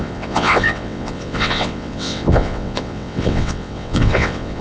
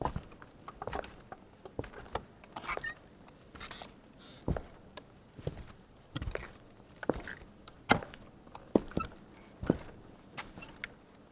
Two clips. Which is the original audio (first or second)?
second